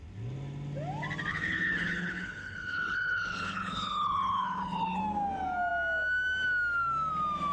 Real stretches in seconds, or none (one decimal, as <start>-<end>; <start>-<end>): 0.0-1.3; 5.0-7.5